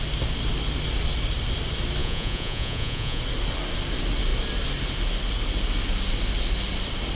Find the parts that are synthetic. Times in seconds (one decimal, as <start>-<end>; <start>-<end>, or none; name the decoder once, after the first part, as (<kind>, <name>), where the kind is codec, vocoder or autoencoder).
2.0-3.2 (vocoder, Vocos)